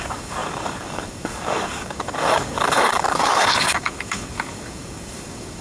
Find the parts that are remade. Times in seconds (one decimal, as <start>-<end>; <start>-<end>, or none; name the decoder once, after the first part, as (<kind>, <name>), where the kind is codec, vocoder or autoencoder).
0.0-5.6 (codec, DAC)